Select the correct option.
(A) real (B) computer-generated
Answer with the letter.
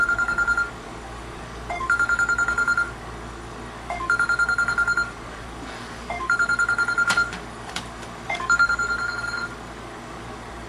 B